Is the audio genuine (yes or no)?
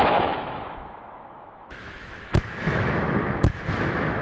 no